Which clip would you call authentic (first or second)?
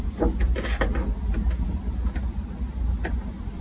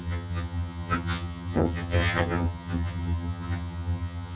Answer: first